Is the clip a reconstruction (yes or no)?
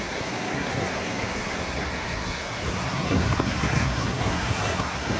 yes